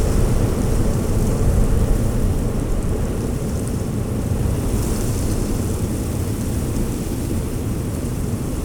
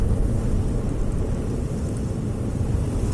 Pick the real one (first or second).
second